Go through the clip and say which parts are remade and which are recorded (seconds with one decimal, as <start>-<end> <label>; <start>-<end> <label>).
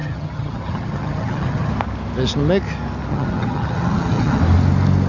0.0-1.7 remade; 1.7-3.1 recorded; 3.1-4.4 remade; 4.4-5.1 recorded